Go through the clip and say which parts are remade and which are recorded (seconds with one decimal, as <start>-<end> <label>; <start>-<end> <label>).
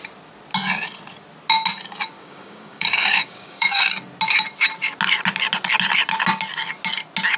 0.0-2.2 recorded; 2.2-3.8 remade; 3.8-7.4 recorded